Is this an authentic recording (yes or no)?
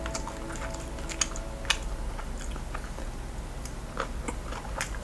yes